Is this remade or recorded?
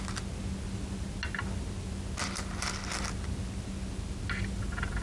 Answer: recorded